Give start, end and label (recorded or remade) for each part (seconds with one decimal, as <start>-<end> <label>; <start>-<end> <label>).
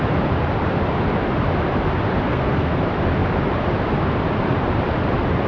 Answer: 0.0-2.3 recorded; 2.3-2.8 remade; 2.8-5.5 recorded